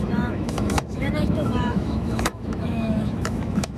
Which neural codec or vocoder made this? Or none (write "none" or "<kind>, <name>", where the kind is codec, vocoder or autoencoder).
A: autoencoder, DAC-VAE